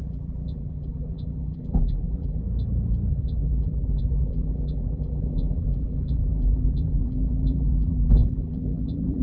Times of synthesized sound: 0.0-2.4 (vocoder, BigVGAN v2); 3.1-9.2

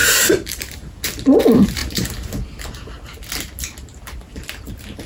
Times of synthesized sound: 0.0-0.7 (vocoder, BigVGAN v2)